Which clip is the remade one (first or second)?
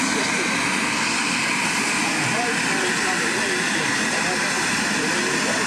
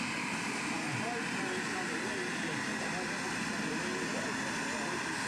first